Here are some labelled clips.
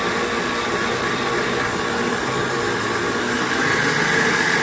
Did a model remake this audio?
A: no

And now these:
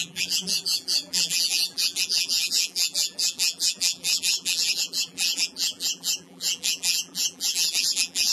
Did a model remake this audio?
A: yes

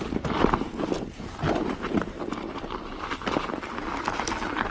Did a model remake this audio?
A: no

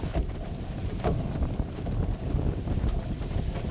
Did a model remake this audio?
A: no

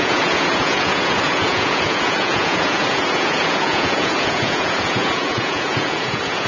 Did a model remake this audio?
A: yes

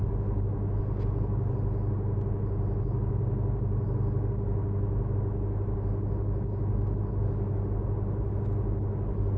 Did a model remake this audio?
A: no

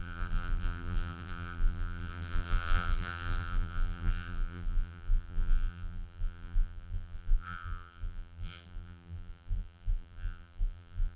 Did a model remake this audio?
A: yes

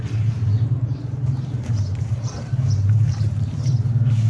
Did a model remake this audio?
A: yes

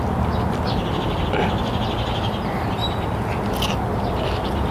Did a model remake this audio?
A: no